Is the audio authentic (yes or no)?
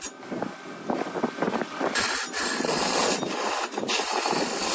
yes